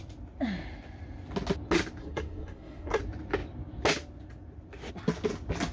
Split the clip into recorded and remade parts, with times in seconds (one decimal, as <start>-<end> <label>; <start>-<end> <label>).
0.0-2.0 recorded; 2.0-3.0 remade; 3.0-5.7 recorded